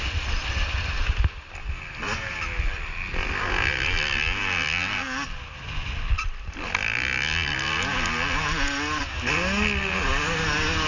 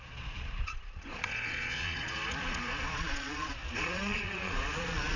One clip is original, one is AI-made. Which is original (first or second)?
first